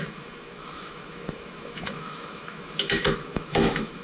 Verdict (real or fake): fake